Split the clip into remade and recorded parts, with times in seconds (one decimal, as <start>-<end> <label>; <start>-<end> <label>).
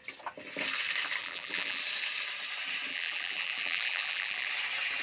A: 0.0-1.2 recorded; 1.2-1.8 remade; 1.8-2.9 recorded; 2.9-4.5 remade; 4.5-5.0 recorded